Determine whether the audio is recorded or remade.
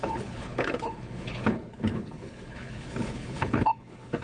remade